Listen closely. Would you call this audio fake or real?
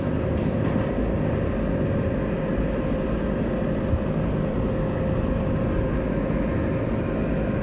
real